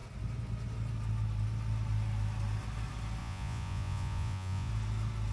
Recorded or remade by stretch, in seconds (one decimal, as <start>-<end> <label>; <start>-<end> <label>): 0.0-3.2 recorded; 3.2-4.7 remade; 4.7-5.3 recorded